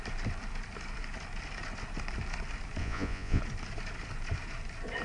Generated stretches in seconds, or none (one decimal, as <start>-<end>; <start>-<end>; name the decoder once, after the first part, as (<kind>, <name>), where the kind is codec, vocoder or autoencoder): 2.8-3.4 (vocoder, Vocos)